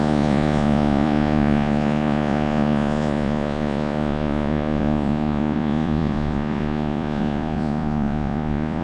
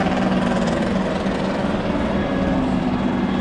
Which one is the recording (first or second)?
second